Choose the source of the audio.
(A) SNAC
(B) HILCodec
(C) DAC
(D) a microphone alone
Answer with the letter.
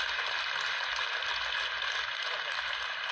D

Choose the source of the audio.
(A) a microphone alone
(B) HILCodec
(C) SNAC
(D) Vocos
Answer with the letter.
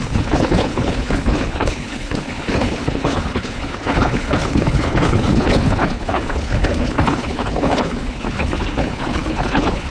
B